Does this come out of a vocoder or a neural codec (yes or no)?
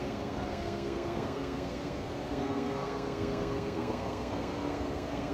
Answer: yes